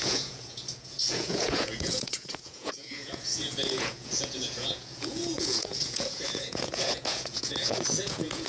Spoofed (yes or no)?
yes